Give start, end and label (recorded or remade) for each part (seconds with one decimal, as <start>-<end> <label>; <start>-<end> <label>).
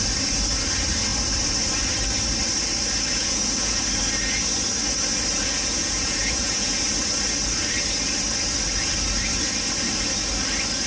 0.0-3.2 recorded; 3.2-3.8 remade; 3.8-5.3 recorded; 5.3-6.8 remade; 6.8-10.9 recorded